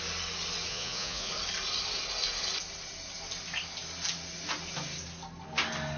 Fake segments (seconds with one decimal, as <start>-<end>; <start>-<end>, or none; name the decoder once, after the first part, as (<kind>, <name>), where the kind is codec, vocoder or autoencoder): 0.7-1.3 (vocoder, Vocos)